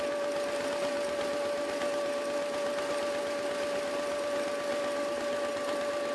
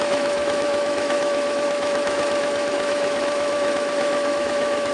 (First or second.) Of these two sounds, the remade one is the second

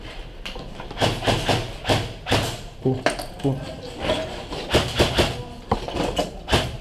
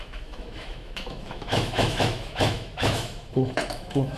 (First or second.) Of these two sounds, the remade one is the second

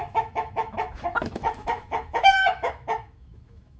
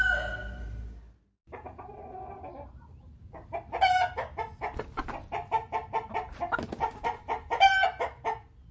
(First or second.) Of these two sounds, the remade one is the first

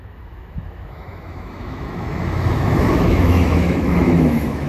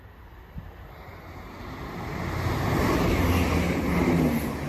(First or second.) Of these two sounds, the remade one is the first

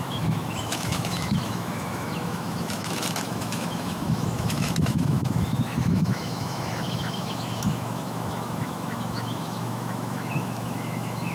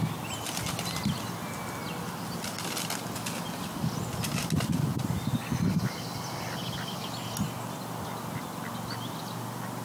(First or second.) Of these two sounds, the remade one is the first